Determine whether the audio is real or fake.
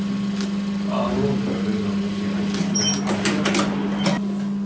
real